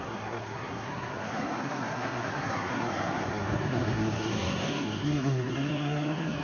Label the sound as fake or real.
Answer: fake